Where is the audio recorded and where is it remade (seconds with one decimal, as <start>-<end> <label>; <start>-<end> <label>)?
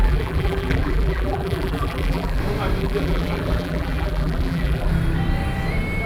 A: 0.0-2.4 remade; 2.4-2.8 recorded; 2.8-4.9 remade; 4.9-6.1 recorded